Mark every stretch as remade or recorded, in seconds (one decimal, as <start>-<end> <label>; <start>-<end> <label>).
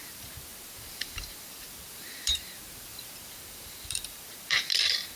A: 0.0-5.2 remade